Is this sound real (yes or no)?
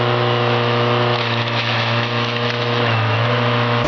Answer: no